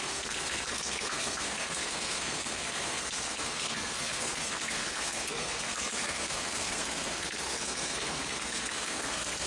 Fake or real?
fake